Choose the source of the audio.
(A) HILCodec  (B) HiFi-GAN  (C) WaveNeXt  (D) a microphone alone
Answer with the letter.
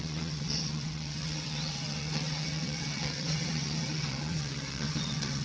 C